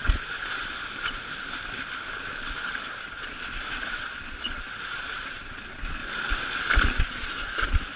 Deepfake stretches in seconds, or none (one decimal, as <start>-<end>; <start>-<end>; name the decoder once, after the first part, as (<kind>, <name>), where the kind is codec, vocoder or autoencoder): 0.0-0.9 (vocoder, Vocos); 2.9-6.0; 7.0-8.0